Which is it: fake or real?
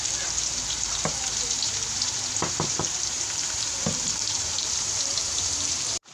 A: fake